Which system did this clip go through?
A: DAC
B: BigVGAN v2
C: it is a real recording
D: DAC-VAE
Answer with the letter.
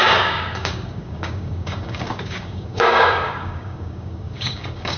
A